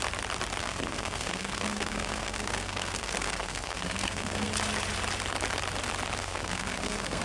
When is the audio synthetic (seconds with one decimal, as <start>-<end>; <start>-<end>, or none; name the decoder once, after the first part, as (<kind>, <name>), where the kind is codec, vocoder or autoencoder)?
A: 0.6-4.5 (codec, SNAC); 6.2-7.2